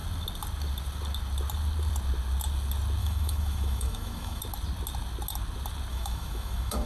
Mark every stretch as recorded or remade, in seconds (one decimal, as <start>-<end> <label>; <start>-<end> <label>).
0.0-3.0 recorded; 3.0-4.4 remade; 4.4-5.9 recorded; 5.9-6.9 remade